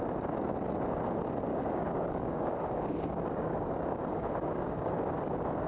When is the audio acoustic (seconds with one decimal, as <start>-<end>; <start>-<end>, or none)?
0.0-1.5; 4.9-5.7